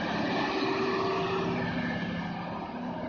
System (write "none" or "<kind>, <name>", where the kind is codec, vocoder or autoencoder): none